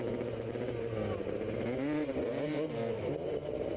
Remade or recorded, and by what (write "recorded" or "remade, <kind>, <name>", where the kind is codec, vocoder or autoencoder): recorded